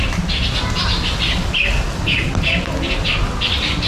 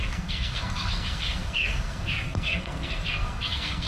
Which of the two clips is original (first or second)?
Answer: first